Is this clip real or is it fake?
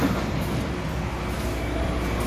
real